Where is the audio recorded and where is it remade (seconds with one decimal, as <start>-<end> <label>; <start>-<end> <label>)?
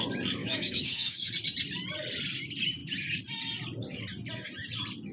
0.0-0.4 recorded; 0.4-1.3 remade; 1.3-5.1 recorded